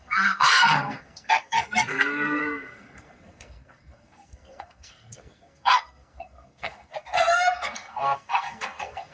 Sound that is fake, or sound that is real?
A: fake